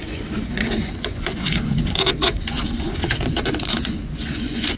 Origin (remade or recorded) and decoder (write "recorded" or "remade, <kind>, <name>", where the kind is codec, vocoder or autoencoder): remade, vocoder, Vocos